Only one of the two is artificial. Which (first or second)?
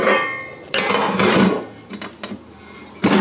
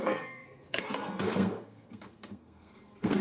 second